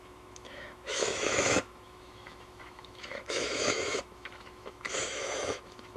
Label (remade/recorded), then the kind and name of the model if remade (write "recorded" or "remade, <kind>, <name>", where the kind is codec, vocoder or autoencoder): remade, autoencoder, DAC-VAE